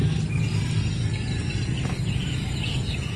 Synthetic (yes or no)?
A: no